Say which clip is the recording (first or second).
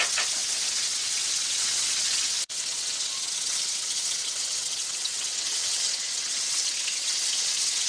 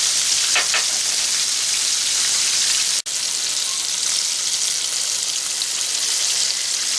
second